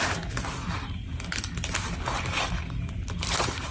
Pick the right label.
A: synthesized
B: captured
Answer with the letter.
B